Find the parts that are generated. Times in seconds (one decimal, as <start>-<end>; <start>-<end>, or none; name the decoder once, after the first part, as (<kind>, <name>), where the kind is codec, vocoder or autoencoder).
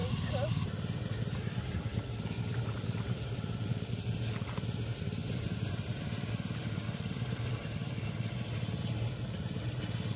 5.2-8.3 (vocoder, BigVGAN v2)